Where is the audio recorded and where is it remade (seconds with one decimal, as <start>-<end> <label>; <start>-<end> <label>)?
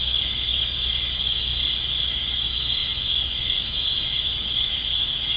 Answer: 0.0-1.5 remade; 1.5-2.1 recorded; 2.1-5.4 remade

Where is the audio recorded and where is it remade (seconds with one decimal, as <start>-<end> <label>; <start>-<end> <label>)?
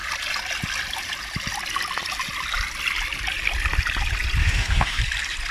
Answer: 0.0-4.4 recorded; 4.4-5.0 remade; 5.0-5.5 recorded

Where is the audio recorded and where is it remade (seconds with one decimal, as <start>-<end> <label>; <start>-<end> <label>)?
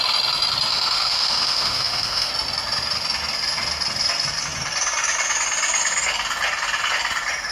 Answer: 0.0-0.7 recorded; 0.7-2.3 remade; 2.3-7.5 recorded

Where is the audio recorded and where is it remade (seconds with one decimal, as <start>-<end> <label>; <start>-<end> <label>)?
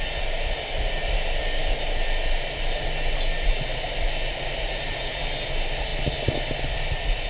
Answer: 0.0-7.3 recorded